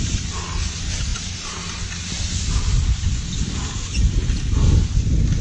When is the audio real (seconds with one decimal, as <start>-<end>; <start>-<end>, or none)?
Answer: 0.0-5.4